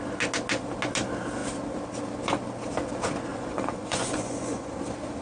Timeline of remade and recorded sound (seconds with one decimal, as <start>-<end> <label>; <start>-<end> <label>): 0.0-3.3 recorded; 3.3-4.7 remade; 4.7-5.2 recorded